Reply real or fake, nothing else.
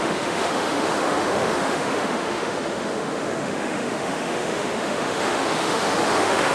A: fake